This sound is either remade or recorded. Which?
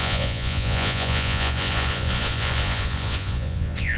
remade